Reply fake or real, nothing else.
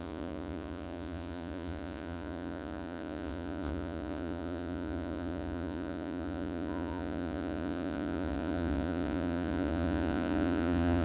fake